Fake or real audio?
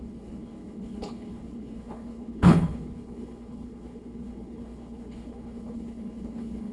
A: fake